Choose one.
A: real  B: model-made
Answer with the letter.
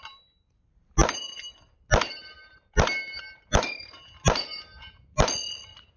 A